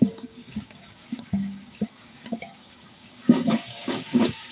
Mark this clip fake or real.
fake